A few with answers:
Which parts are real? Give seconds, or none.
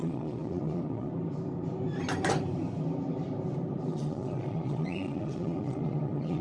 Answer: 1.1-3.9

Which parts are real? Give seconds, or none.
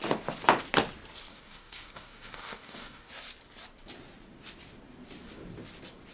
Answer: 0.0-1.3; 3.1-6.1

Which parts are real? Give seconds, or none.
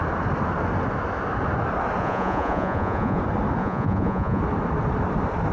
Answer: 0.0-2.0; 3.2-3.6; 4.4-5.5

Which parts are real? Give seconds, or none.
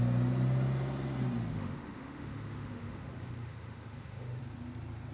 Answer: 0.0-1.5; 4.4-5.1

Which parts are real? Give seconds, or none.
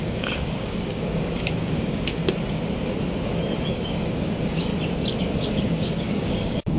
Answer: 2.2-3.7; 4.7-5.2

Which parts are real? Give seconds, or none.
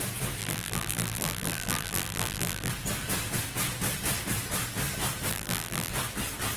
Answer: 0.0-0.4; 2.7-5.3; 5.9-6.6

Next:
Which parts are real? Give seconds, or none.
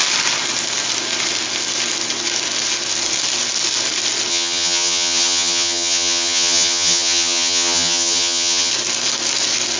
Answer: 0.0-4.3; 8.7-9.8